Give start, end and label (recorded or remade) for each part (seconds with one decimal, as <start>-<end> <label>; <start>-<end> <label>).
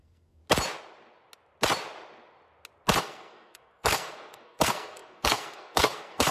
0.0-0.4 remade; 0.4-3.0 recorded; 3.0-6.3 remade